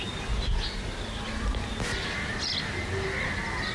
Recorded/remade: recorded